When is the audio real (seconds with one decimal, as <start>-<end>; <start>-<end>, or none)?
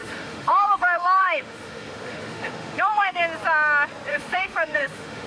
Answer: 3.2-4.1